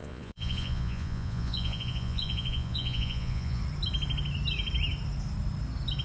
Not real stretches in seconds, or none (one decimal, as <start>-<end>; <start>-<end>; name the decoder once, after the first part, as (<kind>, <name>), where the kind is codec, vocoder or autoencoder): 0.0-3.6 (vocoder, Vocos)